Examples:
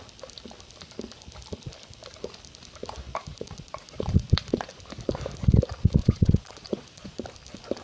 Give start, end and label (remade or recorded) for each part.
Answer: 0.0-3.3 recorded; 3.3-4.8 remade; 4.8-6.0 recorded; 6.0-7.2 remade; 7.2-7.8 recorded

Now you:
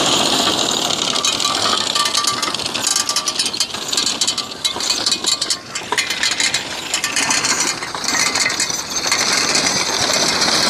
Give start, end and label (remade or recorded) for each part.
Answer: 0.0-10.7 recorded

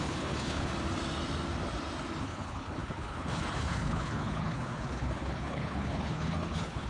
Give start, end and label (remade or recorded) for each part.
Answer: 0.0-0.7 remade; 0.7-2.2 recorded; 2.2-6.9 remade

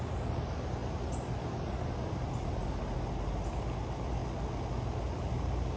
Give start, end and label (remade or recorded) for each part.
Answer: 0.0-5.8 recorded

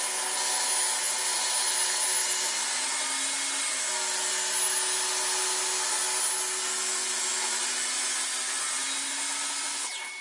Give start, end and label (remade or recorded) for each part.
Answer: 0.0-10.2 recorded